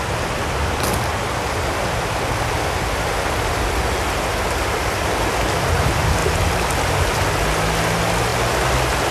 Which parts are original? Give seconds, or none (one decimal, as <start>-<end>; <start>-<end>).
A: 0.0-9.1